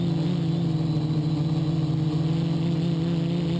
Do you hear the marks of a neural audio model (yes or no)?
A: no